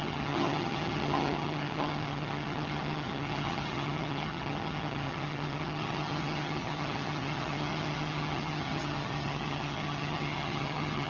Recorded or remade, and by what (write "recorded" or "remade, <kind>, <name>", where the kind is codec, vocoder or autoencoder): remade, vocoder, HiFi-GAN